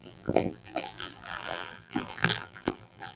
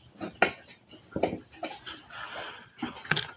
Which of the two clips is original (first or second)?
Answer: second